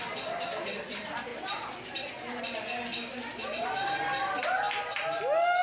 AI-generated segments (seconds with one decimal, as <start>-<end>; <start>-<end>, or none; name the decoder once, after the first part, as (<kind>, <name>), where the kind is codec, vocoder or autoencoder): none